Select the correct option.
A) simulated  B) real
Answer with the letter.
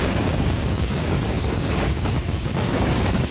A